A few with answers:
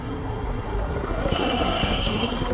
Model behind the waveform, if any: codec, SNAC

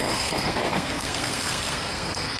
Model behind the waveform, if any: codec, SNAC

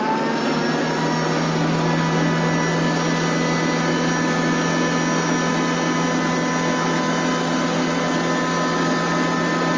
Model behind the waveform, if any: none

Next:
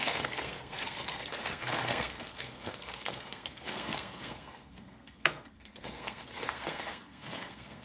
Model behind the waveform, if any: codec, SNAC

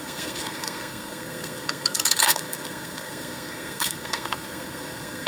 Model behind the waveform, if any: codec, SNAC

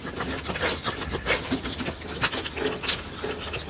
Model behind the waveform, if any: none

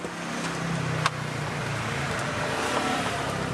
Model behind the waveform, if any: none